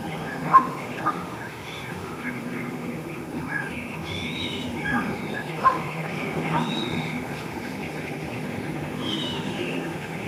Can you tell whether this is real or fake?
fake